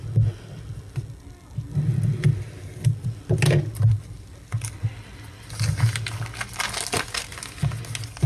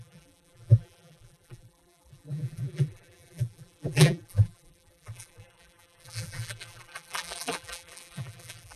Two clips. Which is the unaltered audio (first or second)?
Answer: first